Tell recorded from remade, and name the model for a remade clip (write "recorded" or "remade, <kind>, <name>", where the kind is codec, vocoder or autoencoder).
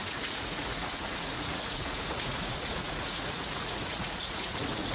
remade, vocoder, Vocos